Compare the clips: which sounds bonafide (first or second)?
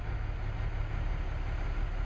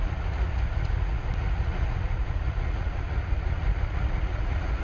first